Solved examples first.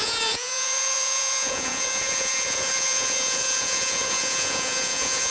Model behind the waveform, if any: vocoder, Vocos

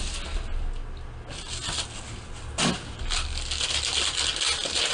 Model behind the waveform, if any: none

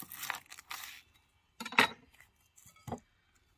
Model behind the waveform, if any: none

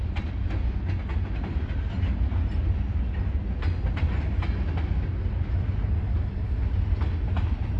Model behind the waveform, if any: none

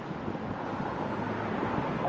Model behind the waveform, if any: none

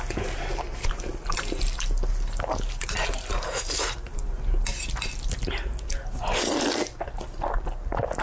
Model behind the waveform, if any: none